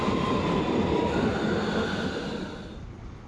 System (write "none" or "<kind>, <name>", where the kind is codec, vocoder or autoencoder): none